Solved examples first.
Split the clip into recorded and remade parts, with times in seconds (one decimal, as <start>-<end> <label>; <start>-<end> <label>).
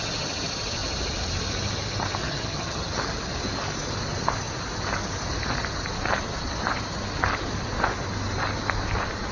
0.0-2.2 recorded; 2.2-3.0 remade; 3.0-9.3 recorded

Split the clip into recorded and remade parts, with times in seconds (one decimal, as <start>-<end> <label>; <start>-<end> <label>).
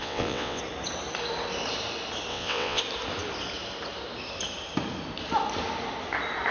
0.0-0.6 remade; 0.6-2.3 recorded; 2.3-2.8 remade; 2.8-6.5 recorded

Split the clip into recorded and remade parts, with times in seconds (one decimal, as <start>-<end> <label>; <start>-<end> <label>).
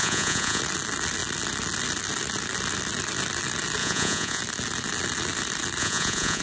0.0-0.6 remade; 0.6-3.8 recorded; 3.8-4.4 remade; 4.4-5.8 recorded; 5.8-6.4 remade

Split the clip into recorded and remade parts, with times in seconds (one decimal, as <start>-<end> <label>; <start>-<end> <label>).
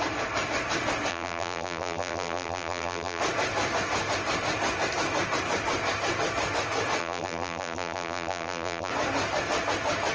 0.0-1.1 recorded; 1.1-3.2 remade; 3.2-7.0 recorded; 7.0-8.9 remade; 8.9-10.1 recorded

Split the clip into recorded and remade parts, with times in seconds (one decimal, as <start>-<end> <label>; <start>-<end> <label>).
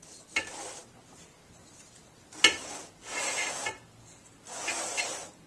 0.0-5.5 recorded